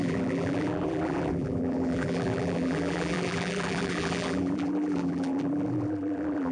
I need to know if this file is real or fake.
fake